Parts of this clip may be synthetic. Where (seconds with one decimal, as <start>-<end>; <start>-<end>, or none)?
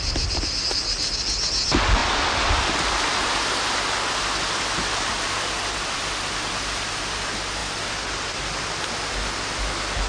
none